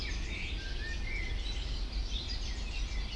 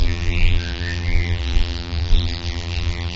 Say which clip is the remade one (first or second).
second